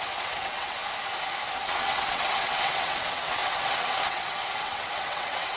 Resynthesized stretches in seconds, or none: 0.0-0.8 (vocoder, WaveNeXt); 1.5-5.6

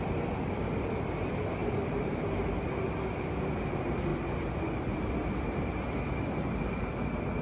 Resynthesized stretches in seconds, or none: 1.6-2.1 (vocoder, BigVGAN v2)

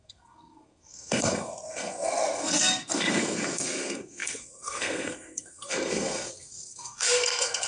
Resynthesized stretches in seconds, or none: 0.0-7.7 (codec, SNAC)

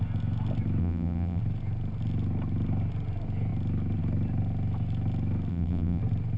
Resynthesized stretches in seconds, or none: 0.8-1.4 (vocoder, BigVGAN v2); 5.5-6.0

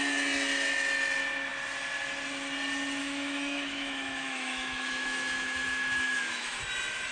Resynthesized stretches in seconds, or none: 3.0-6.6 (autoencoder, DAC-VAE)

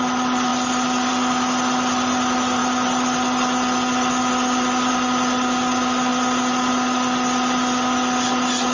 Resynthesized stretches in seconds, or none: none

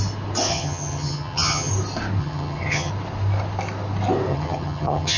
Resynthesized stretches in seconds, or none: 0.5-1.7 (vocoder, HiFi-GAN); 2.2-2.9; 4.3-5.2

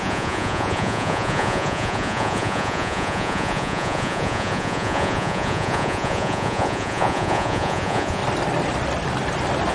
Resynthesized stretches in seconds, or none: 0.0-8.2 (vocoder, Vocos)